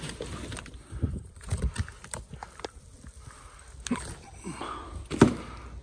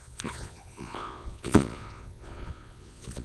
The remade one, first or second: second